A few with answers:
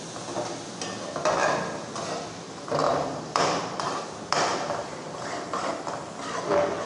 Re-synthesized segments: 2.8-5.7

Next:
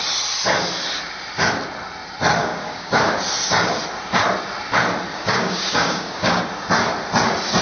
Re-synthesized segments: 2.4-3.0; 5.1-6.4